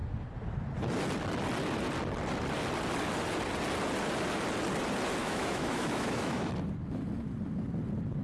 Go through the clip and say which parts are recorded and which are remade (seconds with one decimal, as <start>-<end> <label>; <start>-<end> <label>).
0.0-5.2 recorded; 5.2-6.5 remade; 6.5-8.2 recorded